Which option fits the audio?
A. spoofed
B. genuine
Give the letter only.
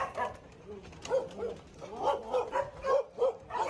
B